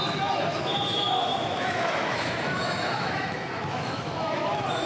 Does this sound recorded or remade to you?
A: remade